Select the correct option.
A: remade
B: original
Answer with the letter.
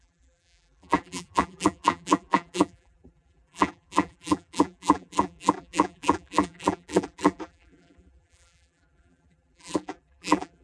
A